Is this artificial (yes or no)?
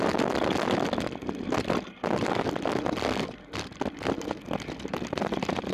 no